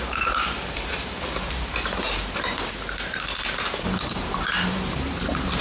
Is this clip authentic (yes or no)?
no